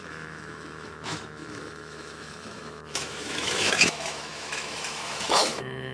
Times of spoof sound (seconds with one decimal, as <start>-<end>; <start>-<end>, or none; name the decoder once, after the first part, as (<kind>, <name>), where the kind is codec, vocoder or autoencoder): 0.0-5.9 (autoencoder, DAC-VAE)